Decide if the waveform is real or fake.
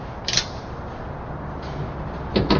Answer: real